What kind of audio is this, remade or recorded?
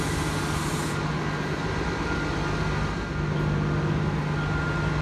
recorded